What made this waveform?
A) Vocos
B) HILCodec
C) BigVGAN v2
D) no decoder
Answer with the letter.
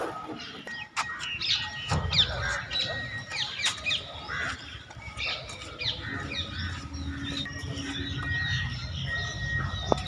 D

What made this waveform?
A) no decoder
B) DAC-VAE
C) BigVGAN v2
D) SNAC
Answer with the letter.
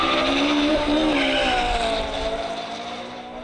C